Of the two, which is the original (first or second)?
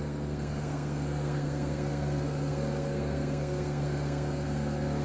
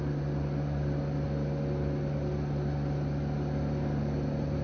second